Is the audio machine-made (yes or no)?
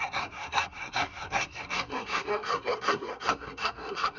yes